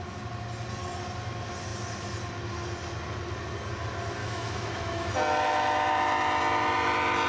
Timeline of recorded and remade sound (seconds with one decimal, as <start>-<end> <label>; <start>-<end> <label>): 0.0-4.2 recorded; 4.2-5.1 remade; 5.1-7.3 recorded